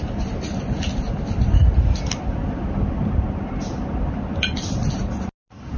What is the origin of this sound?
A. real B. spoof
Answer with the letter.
A